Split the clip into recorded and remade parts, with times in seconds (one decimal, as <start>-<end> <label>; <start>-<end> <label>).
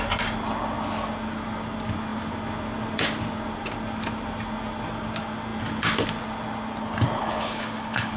0.0-7.2 recorded; 7.2-8.2 remade